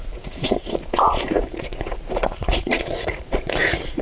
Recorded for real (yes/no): no